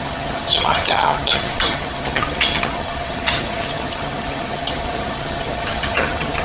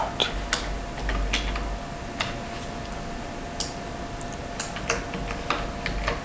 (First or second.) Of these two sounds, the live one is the second